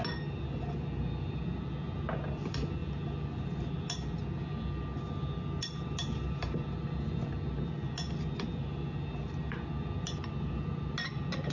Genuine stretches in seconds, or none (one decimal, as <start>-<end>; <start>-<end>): 0.0-11.5